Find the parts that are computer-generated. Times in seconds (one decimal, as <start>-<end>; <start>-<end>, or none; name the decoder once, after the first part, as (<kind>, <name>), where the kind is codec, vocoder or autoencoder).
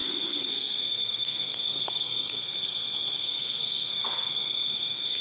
0.0-5.2 (codec, SNAC)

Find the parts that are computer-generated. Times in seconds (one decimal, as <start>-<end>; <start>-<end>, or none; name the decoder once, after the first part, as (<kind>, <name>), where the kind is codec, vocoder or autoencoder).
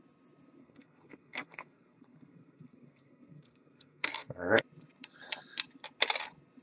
0.6-4.6 (codec, SNAC)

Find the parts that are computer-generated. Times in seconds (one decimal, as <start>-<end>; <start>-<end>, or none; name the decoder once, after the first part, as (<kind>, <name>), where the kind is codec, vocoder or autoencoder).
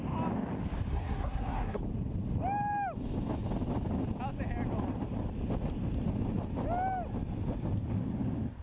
0.9-1.8 (codec, SNAC)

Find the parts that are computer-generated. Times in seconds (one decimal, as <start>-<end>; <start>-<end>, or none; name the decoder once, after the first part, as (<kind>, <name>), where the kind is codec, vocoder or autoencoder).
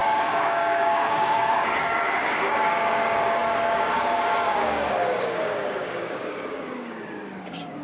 0.0-7.8 (codec, DAC)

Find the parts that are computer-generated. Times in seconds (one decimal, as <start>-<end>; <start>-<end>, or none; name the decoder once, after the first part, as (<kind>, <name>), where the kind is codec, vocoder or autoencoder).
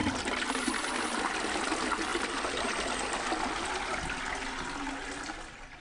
none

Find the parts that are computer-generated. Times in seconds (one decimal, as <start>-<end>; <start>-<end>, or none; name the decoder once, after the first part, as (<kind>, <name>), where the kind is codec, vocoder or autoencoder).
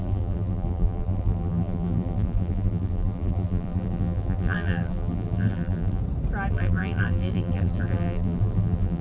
0.0-6.0 (vocoder, BigVGAN v2); 6.5-9.0